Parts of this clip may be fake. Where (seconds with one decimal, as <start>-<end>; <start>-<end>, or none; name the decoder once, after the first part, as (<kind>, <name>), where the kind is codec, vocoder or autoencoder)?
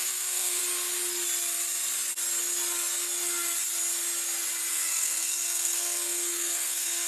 0.0-0.6 (codec, SNAC); 4.7-7.1